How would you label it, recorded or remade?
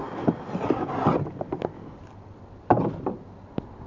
recorded